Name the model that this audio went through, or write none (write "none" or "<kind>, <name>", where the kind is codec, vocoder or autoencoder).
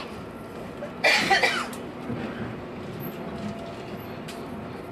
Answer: none